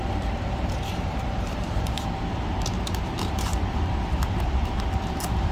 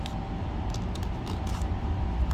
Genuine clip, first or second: second